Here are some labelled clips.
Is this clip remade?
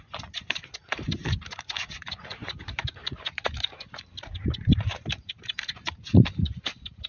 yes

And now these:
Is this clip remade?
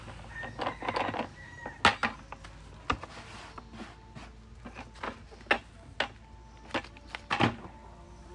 no